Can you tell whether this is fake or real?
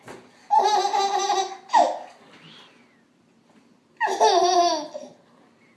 real